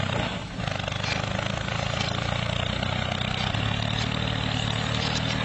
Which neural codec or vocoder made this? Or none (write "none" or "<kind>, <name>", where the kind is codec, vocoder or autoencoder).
none